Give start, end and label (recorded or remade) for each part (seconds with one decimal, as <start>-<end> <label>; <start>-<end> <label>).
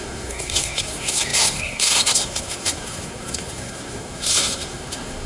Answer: 0.0-5.3 remade